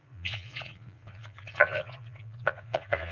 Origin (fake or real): fake